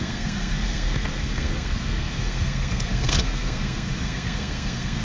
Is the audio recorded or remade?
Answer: remade